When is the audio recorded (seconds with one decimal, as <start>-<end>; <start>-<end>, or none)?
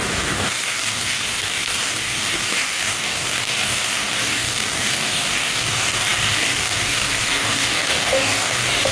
none